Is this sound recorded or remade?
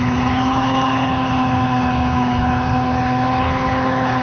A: remade